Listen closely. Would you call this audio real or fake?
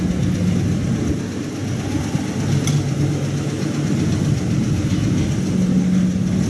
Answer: real